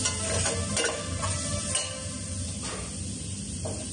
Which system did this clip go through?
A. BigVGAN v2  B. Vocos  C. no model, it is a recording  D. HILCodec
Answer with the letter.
C